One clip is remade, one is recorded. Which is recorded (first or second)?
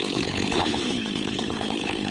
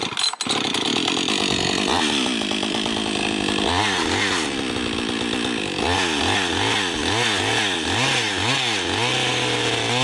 second